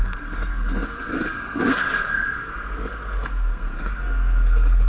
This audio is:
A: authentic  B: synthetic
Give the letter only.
B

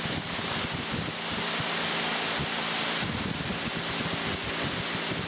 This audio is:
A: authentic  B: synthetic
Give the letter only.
A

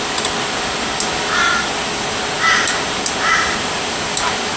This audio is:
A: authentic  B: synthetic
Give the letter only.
A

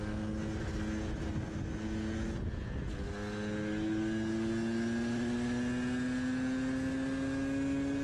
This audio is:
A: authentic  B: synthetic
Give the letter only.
A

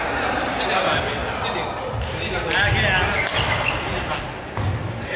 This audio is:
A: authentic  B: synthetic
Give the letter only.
A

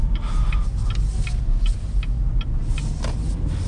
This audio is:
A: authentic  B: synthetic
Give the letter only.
A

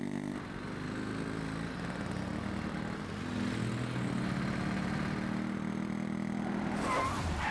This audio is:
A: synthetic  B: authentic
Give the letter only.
B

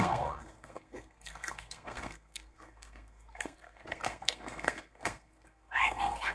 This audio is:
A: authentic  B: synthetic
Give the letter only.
B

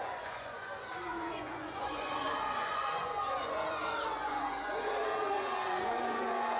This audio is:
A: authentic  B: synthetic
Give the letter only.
B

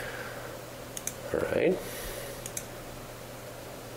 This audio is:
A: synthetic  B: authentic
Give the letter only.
B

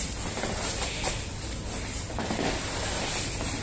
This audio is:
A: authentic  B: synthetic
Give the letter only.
A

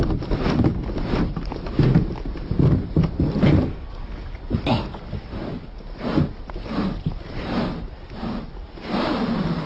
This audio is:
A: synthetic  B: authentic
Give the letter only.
B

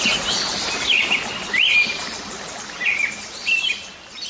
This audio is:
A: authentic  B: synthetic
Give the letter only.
A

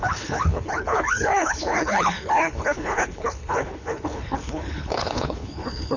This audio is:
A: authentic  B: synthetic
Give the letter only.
B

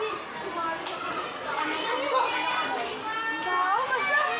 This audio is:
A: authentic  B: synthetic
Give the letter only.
A